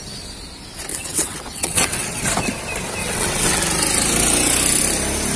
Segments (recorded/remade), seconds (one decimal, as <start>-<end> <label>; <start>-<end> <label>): 0.0-0.9 recorded; 0.9-2.2 remade; 2.2-3.0 recorded; 3.0-3.6 remade; 3.6-5.4 recorded